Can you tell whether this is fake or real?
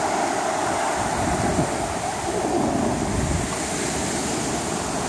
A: real